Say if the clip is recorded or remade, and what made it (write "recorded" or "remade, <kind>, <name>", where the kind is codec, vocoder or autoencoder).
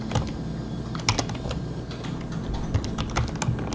recorded